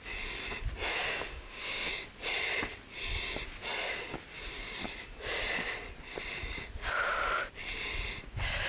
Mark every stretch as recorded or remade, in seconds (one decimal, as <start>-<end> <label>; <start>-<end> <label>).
0.0-1.0 recorded; 1.0-1.9 remade; 1.9-8.7 recorded